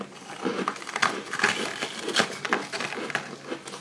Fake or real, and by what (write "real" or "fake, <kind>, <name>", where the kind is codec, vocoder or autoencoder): real